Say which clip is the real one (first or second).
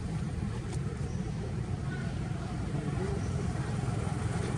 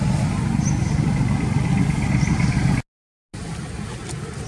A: second